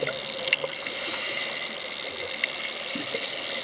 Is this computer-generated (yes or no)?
no